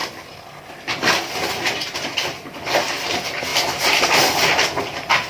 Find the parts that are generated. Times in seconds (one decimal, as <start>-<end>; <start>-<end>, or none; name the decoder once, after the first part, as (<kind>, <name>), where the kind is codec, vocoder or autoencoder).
none